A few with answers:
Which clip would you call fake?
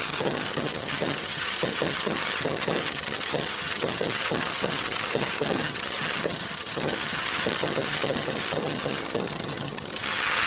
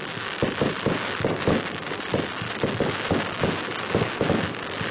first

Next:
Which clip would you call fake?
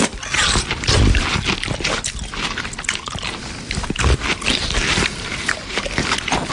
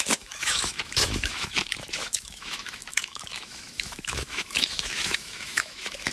second